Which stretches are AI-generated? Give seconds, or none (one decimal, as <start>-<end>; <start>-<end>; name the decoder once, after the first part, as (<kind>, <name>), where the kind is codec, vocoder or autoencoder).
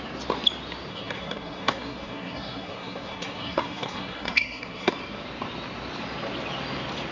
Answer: 0.9-4.9 (codec, SNAC)